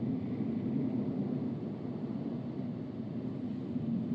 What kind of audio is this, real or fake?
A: real